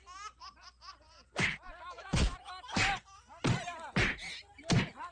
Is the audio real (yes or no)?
yes